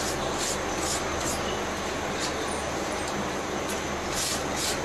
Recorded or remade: recorded